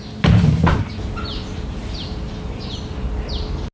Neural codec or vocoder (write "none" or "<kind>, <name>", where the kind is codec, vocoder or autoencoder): none